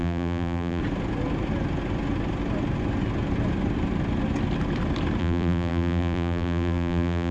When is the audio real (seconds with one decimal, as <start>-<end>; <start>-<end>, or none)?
0.8-5.2